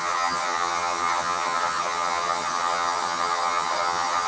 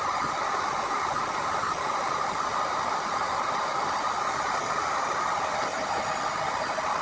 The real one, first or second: second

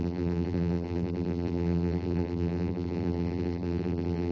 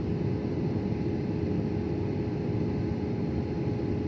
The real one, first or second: second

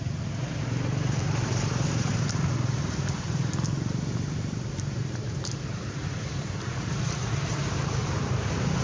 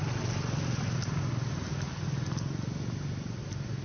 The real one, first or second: second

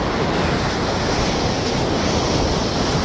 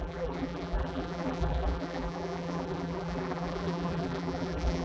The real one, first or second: first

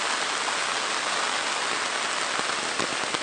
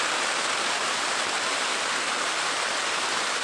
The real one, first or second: first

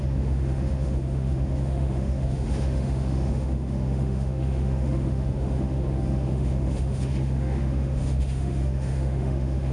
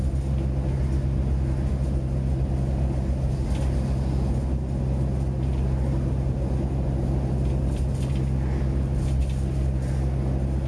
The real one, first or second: second